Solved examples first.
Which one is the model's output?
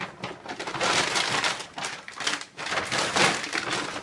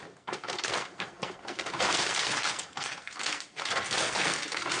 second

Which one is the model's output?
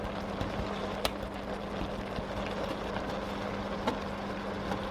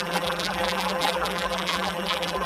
second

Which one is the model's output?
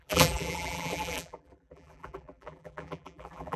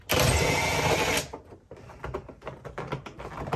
first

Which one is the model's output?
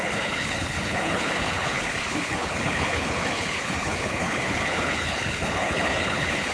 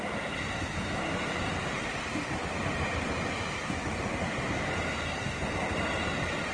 first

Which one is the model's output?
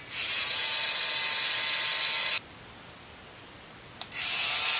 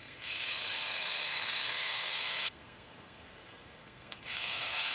second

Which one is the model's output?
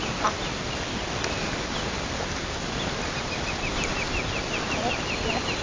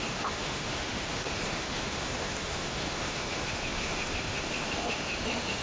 second